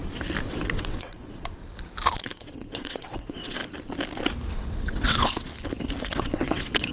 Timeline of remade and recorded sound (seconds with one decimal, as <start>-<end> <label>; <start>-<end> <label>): 0.0-0.5 recorded; 0.5-1.6 remade; 1.6-2.2 recorded; 2.2-3.6 remade; 3.6-4.5 recorded; 4.5-5.5 remade; 5.5-6.0 recorded; 6.0-6.9 remade